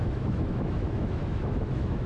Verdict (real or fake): fake